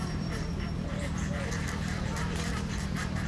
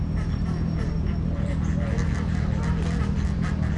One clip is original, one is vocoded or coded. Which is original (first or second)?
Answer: second